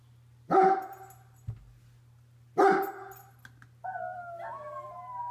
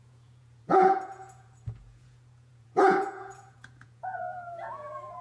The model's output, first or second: second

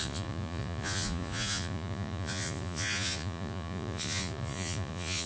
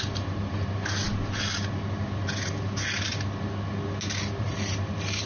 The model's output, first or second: first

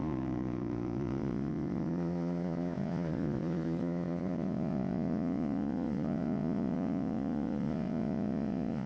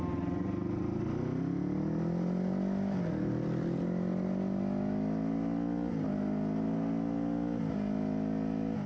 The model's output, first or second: first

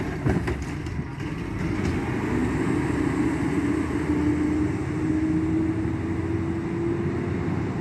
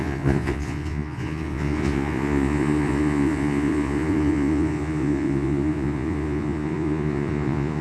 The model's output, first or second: second